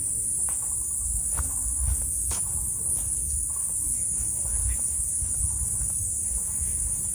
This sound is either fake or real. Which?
fake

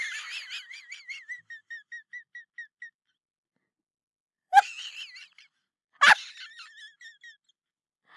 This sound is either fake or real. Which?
real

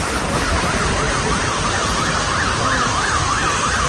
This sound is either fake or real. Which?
real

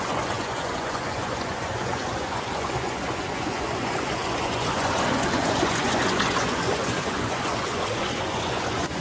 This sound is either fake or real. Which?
fake